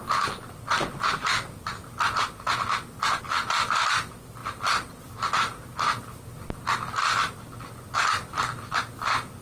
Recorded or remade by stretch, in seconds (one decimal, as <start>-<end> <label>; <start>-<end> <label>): 0.0-9.4 recorded